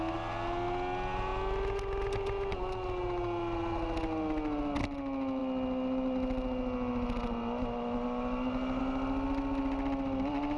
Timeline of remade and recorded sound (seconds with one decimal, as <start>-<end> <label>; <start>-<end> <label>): 0.0-10.6 recorded